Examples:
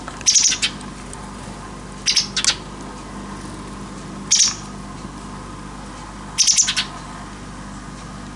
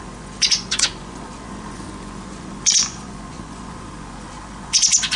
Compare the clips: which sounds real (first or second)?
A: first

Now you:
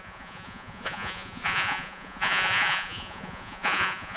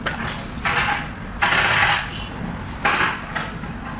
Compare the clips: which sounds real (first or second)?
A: second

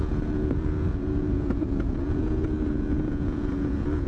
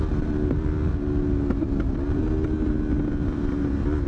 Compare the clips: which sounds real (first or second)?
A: second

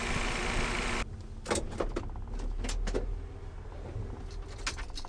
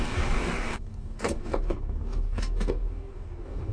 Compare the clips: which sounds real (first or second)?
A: first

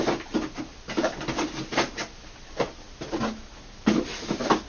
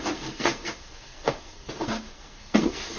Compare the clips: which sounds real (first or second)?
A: first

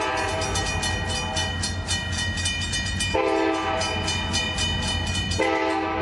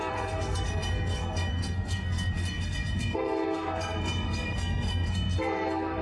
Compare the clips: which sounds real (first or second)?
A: first